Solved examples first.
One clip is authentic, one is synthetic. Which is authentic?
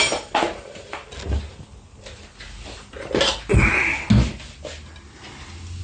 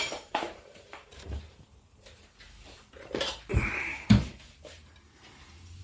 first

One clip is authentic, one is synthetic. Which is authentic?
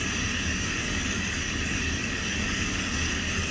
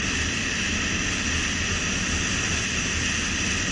second